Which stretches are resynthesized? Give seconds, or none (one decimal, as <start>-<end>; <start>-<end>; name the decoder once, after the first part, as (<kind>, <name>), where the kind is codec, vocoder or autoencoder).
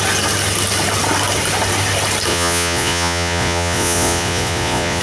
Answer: 2.3-5.0 (vocoder, Vocos)